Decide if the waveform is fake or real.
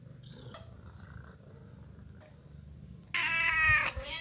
real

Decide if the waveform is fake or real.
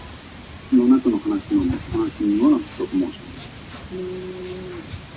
real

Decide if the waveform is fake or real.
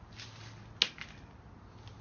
real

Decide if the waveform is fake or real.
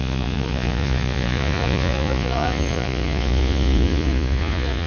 fake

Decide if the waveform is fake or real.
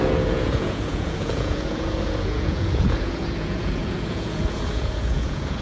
fake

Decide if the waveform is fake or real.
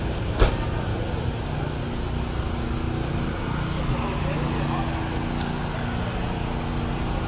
real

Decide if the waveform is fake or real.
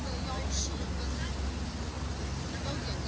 real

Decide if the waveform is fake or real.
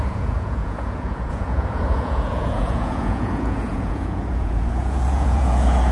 fake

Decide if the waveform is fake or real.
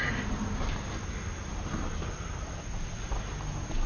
real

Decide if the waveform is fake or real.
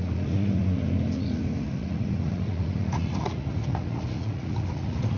fake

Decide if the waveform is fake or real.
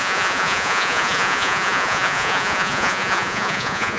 fake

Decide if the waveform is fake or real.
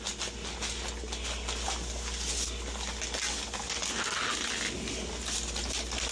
real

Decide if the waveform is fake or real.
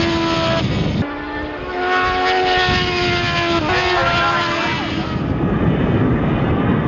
real